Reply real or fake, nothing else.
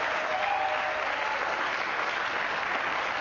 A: real